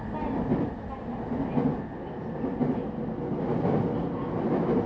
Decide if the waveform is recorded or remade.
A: recorded